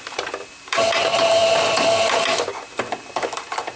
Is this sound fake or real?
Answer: fake